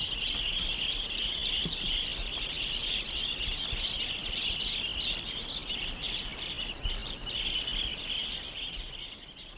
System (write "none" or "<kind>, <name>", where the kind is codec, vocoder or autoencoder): none